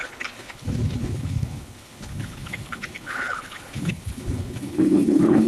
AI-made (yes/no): yes